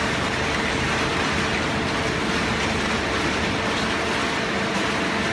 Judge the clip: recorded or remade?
recorded